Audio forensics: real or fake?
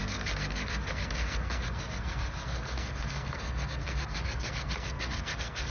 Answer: fake